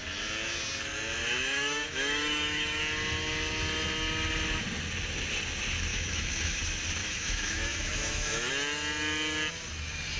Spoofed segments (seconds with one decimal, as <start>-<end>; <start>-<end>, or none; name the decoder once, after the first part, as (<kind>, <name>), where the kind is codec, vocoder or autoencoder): 1.2-2.8 (autoencoder, DAC-VAE); 5.9-6.6; 7.0-8.5